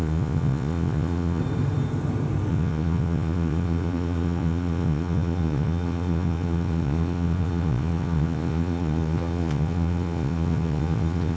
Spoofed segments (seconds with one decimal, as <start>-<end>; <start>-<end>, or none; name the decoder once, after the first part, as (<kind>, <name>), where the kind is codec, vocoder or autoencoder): 0.0-1.4 (vocoder, Vocos); 2.5-11.4